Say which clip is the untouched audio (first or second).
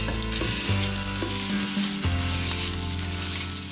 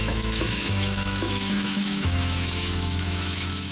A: first